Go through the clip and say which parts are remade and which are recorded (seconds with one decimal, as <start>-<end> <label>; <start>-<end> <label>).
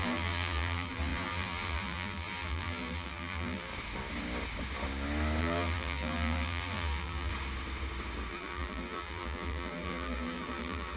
0.0-3.7 remade; 3.7-5.4 recorded; 5.4-7.3 remade; 7.3-8.3 recorded; 8.3-11.0 remade